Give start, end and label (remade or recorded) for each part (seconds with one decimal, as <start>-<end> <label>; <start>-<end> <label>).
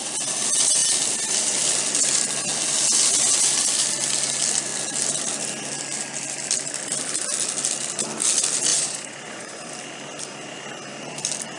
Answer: 0.0-8.7 recorded; 8.7-9.6 remade; 9.6-11.6 recorded